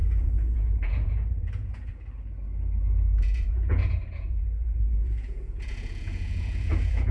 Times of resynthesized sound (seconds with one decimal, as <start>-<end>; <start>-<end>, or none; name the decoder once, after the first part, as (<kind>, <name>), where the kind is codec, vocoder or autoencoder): 0.0-1.9 (vocoder, Vocos); 3.2-7.1